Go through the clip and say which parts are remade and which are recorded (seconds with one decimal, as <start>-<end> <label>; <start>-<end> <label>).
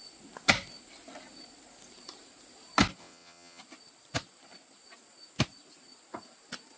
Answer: 0.0-3.0 recorded; 3.0-3.6 remade; 3.6-6.8 recorded